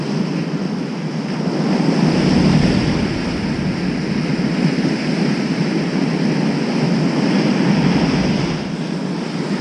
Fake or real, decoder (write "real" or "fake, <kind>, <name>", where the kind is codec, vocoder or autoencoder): real